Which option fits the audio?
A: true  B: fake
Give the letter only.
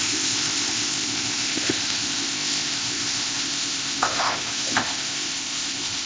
B